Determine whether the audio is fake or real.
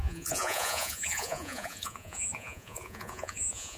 fake